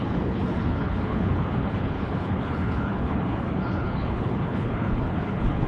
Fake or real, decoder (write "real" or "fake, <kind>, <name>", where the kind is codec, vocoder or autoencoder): fake, codec, HILCodec